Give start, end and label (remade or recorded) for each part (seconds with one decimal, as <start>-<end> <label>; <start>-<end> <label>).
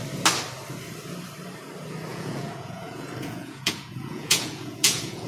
0.0-2.1 recorded; 2.1-5.3 remade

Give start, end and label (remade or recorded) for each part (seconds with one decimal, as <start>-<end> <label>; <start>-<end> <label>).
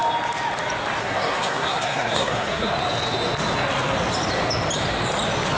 0.0-1.0 recorded; 1.0-2.7 remade; 2.7-5.6 recorded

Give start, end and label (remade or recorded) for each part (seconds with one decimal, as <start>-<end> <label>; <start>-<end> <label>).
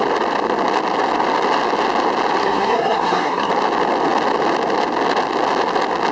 0.0-2.4 recorded; 2.4-3.5 remade; 3.5-6.1 recorded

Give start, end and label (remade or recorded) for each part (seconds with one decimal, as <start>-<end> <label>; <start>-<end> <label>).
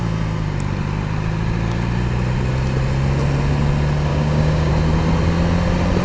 0.0-4.1 recorded; 4.1-4.7 remade; 4.7-6.0 recorded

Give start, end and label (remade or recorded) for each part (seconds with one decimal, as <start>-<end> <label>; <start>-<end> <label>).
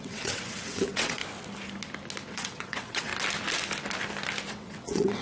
0.0-1.2 remade; 1.2-2.3 recorded; 2.3-3.1 remade; 3.1-4.5 recorded; 4.5-5.2 remade